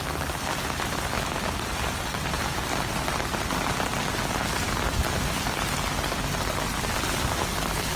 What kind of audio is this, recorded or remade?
recorded